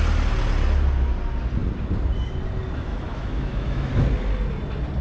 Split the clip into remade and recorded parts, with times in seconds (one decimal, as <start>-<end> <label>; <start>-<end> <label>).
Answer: 0.0-2.9 recorded; 2.9-3.9 remade; 3.9-5.0 recorded